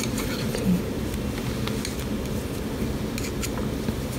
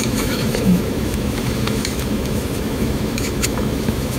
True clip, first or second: first